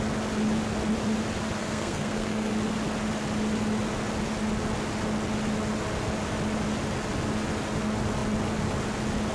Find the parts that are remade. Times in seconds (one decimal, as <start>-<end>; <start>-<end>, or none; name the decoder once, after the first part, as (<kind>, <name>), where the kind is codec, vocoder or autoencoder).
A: 1.6-2.5 (codec, SNAC)